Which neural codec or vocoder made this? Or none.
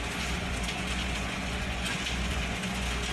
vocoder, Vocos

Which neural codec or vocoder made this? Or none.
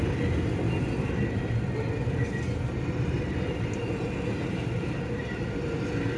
none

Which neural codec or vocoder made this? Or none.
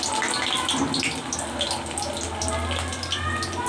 none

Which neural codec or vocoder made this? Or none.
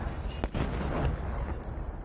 none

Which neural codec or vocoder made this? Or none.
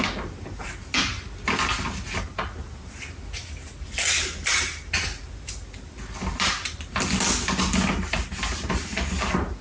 none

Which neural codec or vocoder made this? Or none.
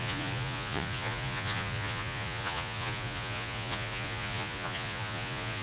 vocoder, Vocos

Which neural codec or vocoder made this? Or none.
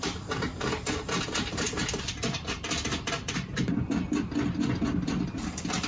none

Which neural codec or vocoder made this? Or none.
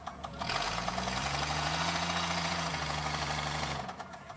vocoder, Vocos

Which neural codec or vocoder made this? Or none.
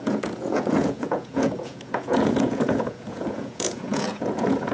vocoder, Vocos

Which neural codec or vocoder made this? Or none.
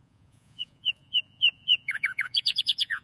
vocoder, Vocos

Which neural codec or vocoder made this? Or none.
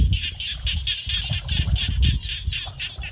none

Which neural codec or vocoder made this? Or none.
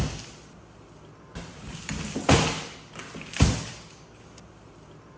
none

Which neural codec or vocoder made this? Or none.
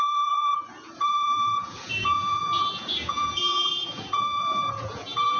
vocoder, Vocos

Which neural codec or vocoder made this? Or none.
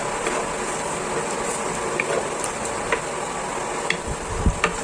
none